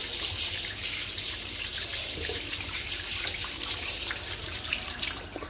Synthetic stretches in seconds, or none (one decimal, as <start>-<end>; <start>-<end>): 0.0-5.5